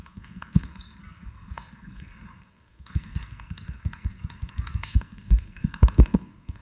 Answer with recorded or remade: remade